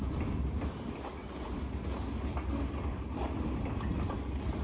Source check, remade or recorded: recorded